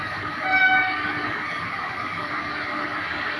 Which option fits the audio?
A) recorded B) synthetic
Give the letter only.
B